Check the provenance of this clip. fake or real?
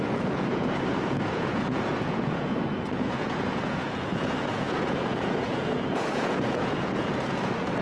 fake